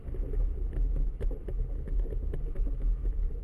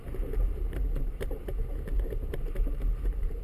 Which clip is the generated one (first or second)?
second